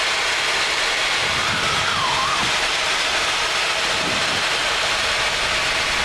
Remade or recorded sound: recorded